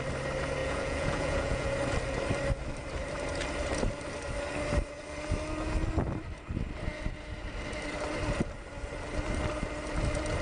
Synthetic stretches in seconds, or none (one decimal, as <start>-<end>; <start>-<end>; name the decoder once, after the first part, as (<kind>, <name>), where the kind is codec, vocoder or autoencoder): 0.6-1.7 (vocoder, Vocos)